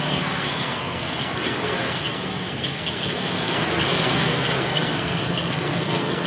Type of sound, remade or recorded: remade